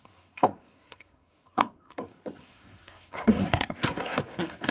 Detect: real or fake fake